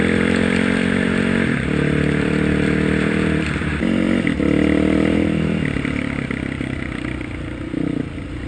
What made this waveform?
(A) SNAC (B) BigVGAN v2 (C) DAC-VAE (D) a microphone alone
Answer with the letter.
B